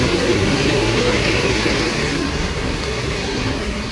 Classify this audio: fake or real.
fake